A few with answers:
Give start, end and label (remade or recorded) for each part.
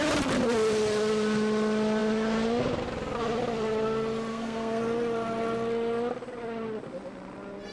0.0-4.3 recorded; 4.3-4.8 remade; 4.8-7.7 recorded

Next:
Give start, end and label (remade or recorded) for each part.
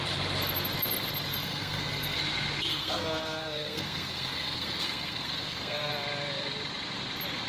0.0-1.3 recorded; 1.3-2.2 remade; 2.2-2.7 recorded; 2.7-5.9 remade; 5.9-7.5 recorded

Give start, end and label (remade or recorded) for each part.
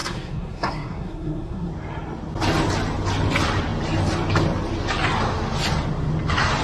0.0-1.7 remade; 1.7-6.6 recorded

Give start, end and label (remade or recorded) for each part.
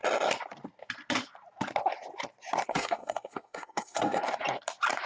0.0-2.7 recorded; 2.7-4.2 remade; 4.2-5.1 recorded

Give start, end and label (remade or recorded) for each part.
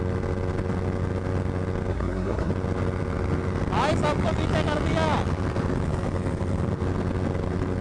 0.0-1.9 recorded; 1.9-2.5 remade; 2.5-7.8 recorded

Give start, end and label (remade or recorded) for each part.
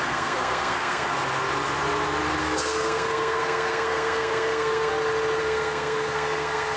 0.0-1.1 remade; 1.1-2.4 recorded; 2.4-4.9 remade; 4.9-5.4 recorded; 5.4-6.8 remade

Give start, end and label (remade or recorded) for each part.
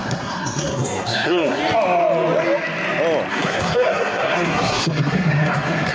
0.0-1.6 remade; 1.6-3.3 recorded; 3.3-5.9 remade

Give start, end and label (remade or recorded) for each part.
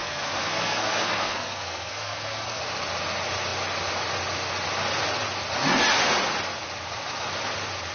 0.0-2.6 remade; 2.6-7.9 recorded